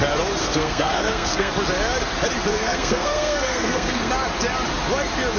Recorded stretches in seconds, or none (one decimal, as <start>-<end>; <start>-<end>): 0.0-0.4; 1.5-2.5; 4.1-5.4